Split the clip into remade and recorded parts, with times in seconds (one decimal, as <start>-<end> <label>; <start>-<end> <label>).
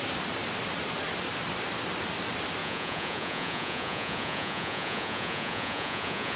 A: 0.0-2.6 recorded; 2.6-6.4 remade